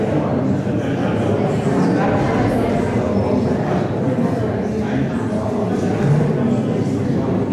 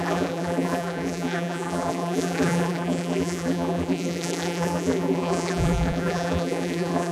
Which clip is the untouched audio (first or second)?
first